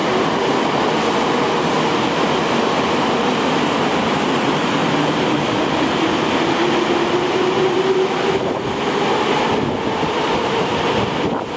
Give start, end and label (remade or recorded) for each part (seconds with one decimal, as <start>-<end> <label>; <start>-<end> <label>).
0.0-11.6 recorded